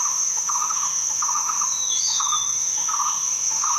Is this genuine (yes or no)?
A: no